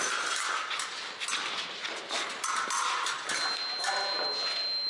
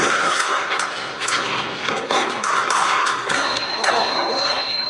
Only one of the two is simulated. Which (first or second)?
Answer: second